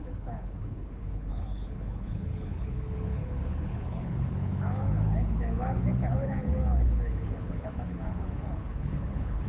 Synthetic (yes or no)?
yes